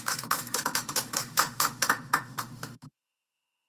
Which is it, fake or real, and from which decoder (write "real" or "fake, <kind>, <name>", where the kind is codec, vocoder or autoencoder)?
fake, autoencoder, DAC-VAE